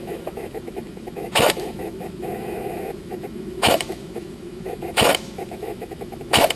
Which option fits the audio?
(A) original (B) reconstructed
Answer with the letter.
B